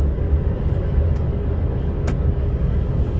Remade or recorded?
remade